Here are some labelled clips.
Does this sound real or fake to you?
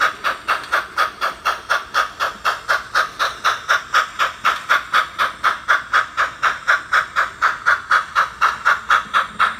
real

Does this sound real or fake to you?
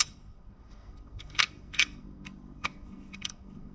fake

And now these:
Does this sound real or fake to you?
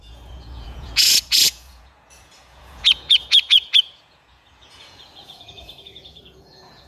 fake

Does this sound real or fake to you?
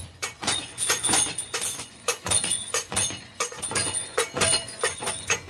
fake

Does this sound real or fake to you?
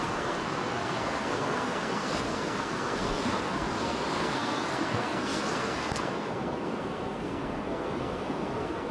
fake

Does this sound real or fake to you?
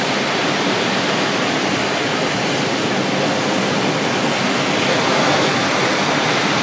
real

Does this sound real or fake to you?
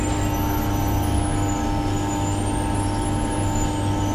real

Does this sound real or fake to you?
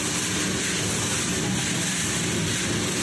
real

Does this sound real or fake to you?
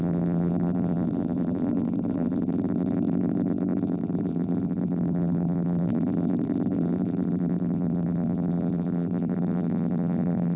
fake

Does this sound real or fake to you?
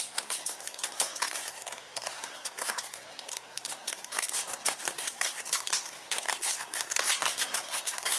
fake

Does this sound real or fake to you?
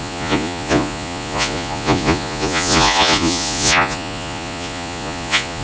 fake